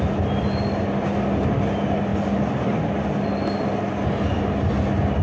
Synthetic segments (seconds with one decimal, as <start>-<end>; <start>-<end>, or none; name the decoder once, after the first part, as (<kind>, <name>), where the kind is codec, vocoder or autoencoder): none